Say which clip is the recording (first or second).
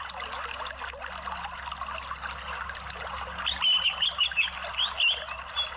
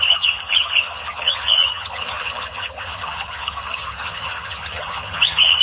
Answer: first